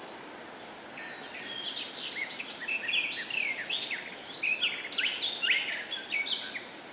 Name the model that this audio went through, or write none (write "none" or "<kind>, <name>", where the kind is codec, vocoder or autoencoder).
none